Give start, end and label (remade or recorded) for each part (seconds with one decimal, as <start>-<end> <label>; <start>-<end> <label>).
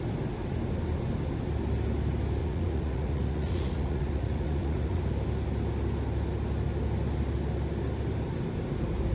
0.0-2.4 recorded; 2.4-5.0 remade; 5.0-9.1 recorded